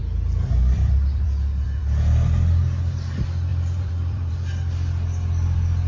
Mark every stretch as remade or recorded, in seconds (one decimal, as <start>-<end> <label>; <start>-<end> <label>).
0.0-1.8 remade; 1.8-3.5 recorded; 3.5-4.3 remade; 4.3-5.9 recorded